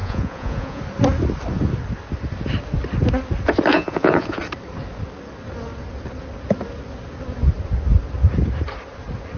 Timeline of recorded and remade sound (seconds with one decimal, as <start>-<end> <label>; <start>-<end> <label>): 0.0-0.8 remade; 0.8-3.7 recorded; 3.7-4.4 remade; 4.4-9.4 recorded